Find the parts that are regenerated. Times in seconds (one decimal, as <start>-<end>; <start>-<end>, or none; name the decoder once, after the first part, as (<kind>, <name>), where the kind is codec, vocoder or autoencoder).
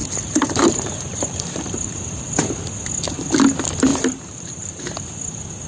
0.0-2.5 (vocoder, BigVGAN v2); 3.9-4.8